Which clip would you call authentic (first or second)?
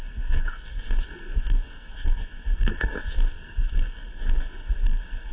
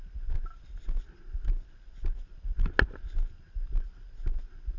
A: second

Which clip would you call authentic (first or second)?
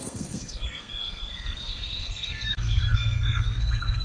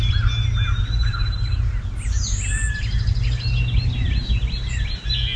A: second